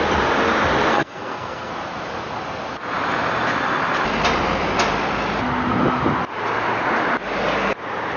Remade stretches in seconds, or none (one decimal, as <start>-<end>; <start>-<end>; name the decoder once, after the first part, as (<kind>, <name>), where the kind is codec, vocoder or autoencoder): 0.9-1.7 (codec, SNAC)